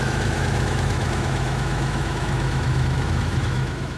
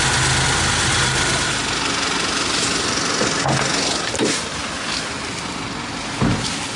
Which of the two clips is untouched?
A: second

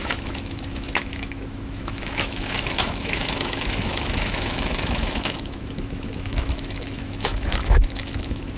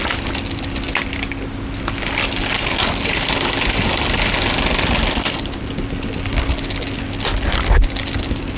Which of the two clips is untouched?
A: second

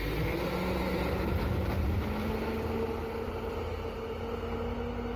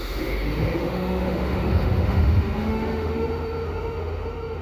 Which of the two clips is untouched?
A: first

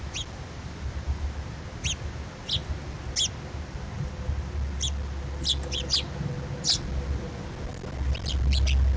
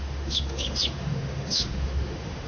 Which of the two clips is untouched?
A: first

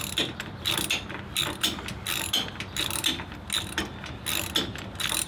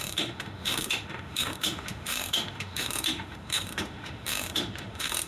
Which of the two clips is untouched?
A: first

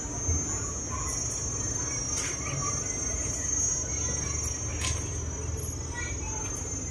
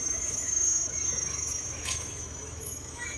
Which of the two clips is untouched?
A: first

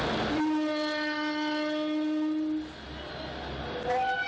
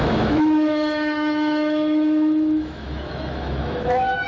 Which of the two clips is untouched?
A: first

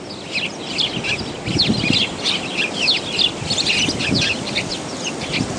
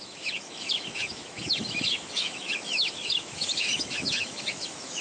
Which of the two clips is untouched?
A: first